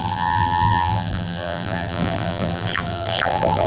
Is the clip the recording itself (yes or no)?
no